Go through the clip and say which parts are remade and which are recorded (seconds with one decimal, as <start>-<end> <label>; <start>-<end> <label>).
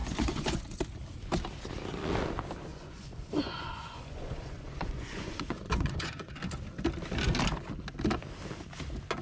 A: 0.0-0.6 remade; 0.6-2.7 recorded; 2.7-6.3 remade; 6.3-9.2 recorded